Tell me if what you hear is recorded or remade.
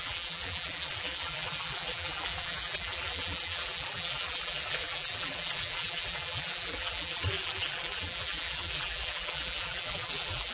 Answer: remade